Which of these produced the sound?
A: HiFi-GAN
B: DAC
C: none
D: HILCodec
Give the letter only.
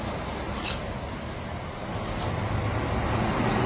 C